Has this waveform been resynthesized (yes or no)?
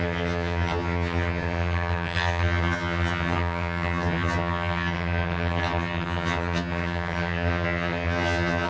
yes